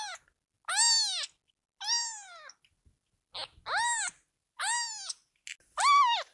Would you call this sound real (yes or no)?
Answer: yes